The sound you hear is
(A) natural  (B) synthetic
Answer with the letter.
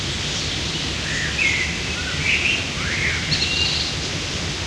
A